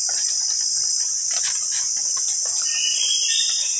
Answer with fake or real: real